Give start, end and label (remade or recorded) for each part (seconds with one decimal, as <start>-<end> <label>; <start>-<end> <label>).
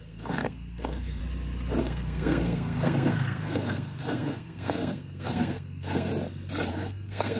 0.0-1.2 remade; 1.2-1.8 recorded; 1.8-6.1 remade; 6.1-6.7 recorded; 6.7-7.4 remade